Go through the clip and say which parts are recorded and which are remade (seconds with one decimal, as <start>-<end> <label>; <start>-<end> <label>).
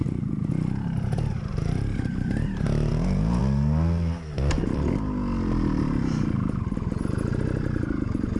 0.0-3.4 remade; 3.4-8.4 recorded